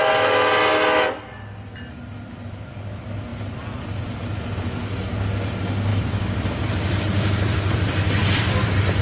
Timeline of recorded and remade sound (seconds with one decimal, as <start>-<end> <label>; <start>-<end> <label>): 0.0-3.3 recorded; 3.3-4.5 remade; 4.5-5.9 recorded; 5.9-9.0 remade